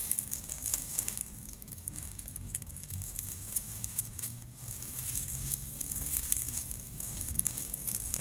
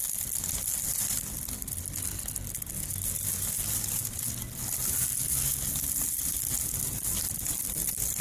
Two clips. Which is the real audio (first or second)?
second